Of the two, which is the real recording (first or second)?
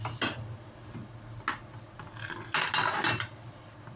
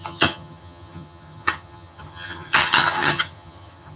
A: first